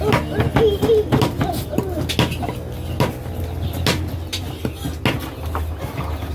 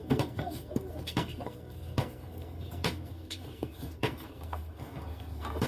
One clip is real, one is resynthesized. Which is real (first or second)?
first